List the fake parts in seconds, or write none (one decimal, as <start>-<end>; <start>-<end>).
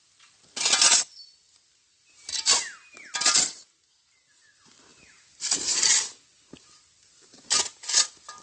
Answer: none